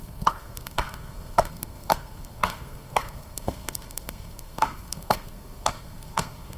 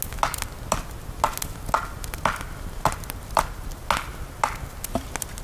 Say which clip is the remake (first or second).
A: first